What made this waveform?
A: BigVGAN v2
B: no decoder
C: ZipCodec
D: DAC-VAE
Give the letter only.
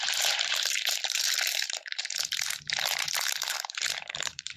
A